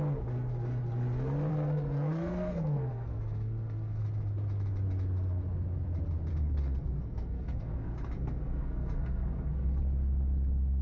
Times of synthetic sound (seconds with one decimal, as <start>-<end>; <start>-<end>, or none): 1.5-4.0; 6.3-9.8